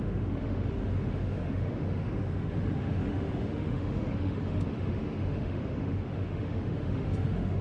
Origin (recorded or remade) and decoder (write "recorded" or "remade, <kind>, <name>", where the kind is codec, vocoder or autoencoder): remade, autoencoder, DAC-VAE